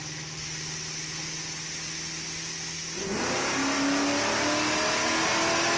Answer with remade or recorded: recorded